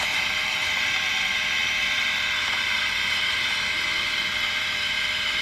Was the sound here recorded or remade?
remade